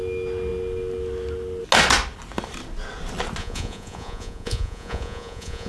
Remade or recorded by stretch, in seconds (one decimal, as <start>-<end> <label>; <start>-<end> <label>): 0.0-3.4 recorded; 3.4-5.7 remade